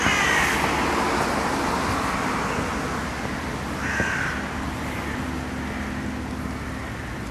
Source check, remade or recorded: recorded